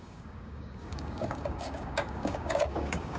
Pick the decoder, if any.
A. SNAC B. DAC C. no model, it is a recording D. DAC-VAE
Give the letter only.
B